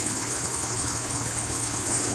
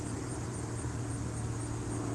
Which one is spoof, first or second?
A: first